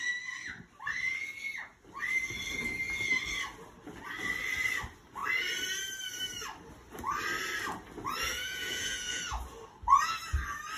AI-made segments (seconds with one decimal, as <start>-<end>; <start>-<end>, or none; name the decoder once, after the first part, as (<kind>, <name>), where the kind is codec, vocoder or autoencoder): 8.3-9.2 (vocoder, Vocos)